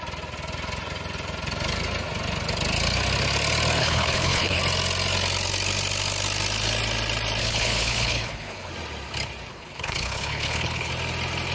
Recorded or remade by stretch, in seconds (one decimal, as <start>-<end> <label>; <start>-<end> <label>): 0.0-3.8 recorded; 3.8-4.6 remade; 4.6-7.4 recorded; 7.4-8.7 remade; 8.7-9.5 recorded; 9.5-10.9 remade; 10.9-11.5 recorded